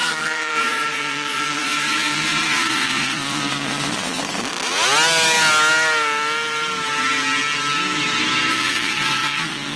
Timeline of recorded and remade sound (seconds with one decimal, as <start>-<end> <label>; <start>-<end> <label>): 0.0-4.2 remade; 4.2-8.5 recorded; 8.5-9.8 remade

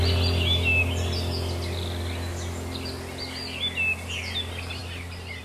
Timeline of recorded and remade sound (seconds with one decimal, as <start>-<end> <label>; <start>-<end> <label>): 0.0-5.4 recorded

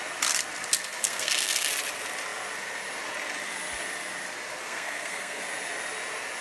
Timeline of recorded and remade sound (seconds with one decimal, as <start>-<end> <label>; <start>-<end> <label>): 0.0-1.0 recorded; 1.0-1.7 remade; 1.7-4.6 recorded; 4.6-5.4 remade; 5.4-6.4 recorded

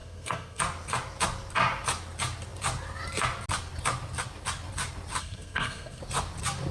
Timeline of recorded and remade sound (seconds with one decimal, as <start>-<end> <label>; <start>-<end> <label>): 0.0-0.6 remade; 0.6-5.2 recorded; 5.2-6.0 remade; 6.0-6.7 recorded

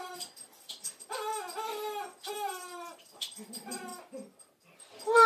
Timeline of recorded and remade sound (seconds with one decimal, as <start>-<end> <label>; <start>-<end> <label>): 0.0-1.3 remade; 1.3-2.3 recorded; 2.3-3.9 remade; 3.9-4.4 recorded; 4.4-5.3 remade

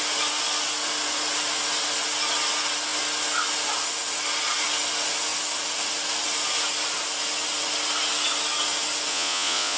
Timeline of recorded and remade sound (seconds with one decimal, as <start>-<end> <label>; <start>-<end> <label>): 0.0-9.1 recorded; 9.1-9.8 remade